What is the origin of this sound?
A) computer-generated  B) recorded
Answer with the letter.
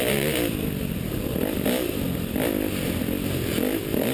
A